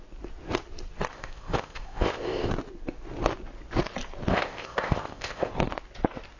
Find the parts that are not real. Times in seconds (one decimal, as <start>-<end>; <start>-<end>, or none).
1.1-2.5; 4.3-5.5